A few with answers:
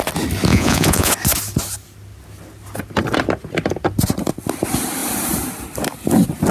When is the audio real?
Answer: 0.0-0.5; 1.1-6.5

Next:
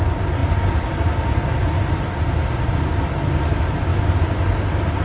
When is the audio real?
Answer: 0.0-5.0

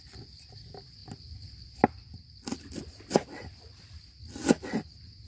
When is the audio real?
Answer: 0.0-5.3

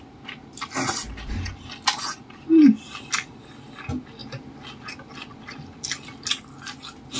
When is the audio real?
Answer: 0.0-7.2

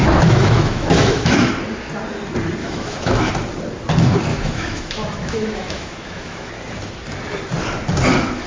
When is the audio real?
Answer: 1.5-2.6; 3.3-4.3; 6.5-8.5

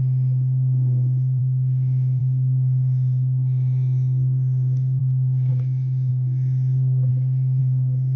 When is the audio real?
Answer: 0.0-1.4; 7.1-7.6

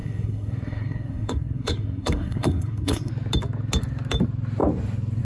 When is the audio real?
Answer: 3.1-5.2

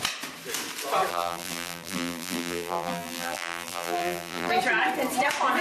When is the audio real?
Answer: 0.0-1.1; 4.5-5.6